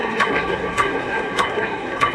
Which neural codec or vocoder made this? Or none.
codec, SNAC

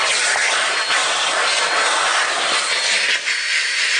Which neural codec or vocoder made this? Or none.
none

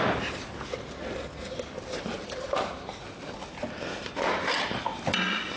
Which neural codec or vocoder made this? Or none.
none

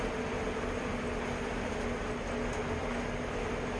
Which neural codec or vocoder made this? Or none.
none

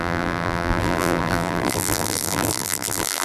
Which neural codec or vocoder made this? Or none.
vocoder, BigVGAN v2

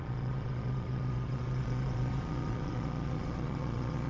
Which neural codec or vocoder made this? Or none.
vocoder, Vocos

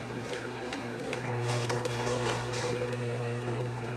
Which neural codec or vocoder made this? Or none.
codec, SNAC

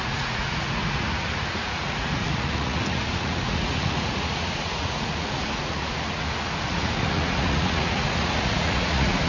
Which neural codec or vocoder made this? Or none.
vocoder, Vocos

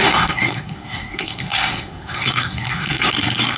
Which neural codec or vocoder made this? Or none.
codec, SNAC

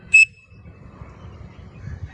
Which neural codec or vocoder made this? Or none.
vocoder, BigVGAN v2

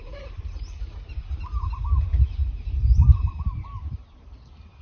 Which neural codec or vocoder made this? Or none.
vocoder, BigVGAN v2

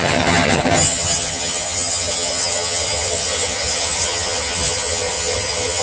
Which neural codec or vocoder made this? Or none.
vocoder, HiFi-GAN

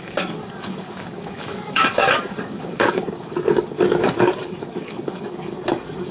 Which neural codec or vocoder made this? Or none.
codec, DAC